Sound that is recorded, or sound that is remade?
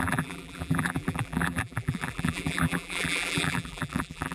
remade